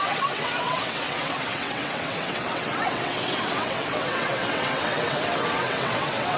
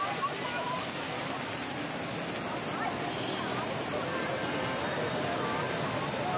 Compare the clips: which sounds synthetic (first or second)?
first